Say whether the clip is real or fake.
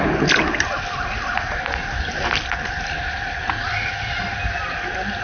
real